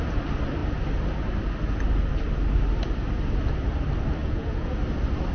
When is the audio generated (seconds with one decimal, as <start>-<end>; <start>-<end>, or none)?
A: 4.2-4.8